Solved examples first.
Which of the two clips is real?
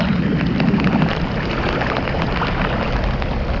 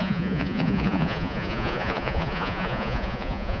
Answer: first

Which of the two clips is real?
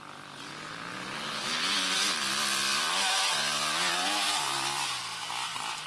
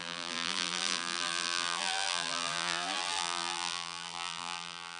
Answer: first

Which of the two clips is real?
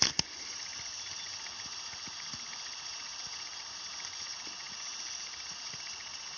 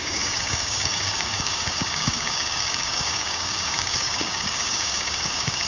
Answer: first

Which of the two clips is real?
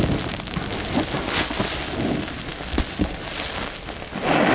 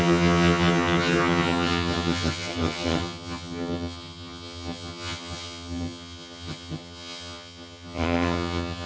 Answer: first